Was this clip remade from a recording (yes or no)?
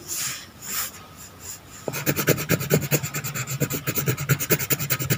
no